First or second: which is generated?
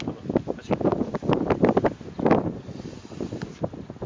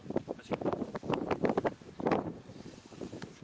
second